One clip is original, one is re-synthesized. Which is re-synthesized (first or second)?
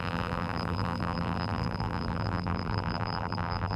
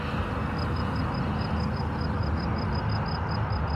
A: first